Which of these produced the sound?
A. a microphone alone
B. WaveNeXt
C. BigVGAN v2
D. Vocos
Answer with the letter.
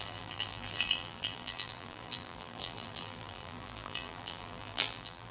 C